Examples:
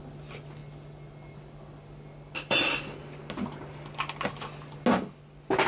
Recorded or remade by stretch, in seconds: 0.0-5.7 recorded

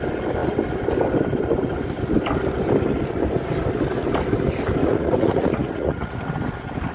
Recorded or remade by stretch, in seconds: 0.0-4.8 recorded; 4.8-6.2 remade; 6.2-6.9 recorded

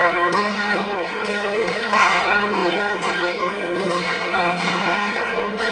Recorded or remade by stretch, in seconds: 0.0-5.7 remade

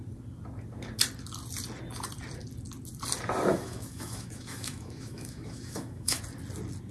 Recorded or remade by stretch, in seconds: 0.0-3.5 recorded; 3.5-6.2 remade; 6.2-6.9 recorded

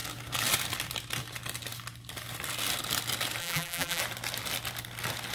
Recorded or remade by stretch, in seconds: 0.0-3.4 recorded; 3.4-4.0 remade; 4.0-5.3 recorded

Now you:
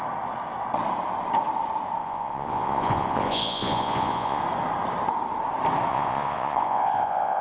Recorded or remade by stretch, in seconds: 0.0-2.0 recorded; 2.0-4.4 remade; 4.4-5.9 recorded; 5.9-7.4 remade